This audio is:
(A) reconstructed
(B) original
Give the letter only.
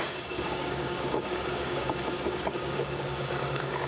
A